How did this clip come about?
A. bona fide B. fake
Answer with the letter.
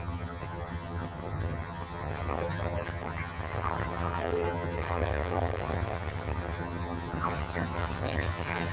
B